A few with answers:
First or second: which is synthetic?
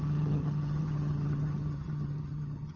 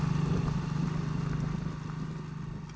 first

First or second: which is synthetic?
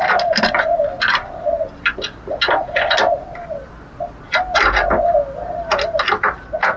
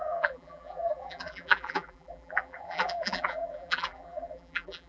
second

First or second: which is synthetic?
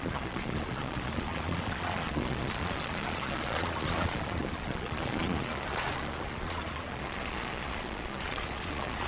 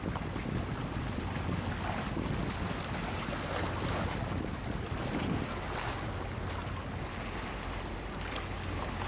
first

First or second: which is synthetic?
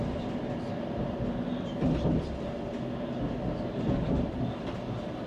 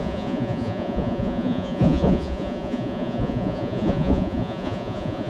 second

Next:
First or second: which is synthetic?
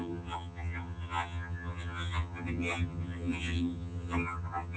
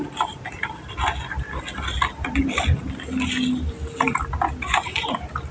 first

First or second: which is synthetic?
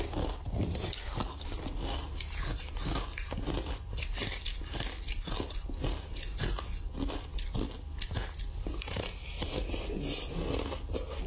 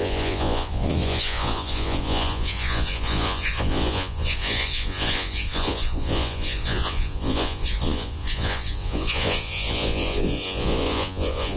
second